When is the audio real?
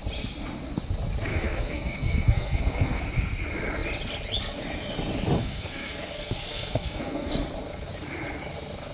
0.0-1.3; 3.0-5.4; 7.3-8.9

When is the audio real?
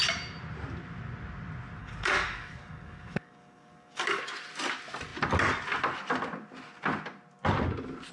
0.0-1.8; 4.2-8.1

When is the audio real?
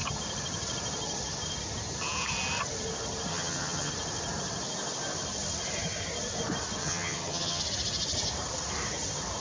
0.0-3.3; 3.9-6.8; 7.6-9.4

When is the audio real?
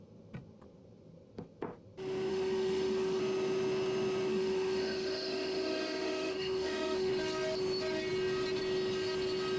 0.0-2.3; 3.2-4.3; 7.1-9.6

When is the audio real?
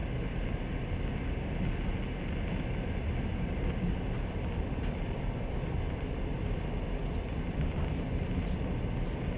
0.0-3.3; 7.6-9.4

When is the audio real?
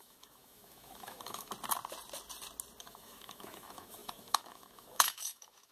1.5-2.8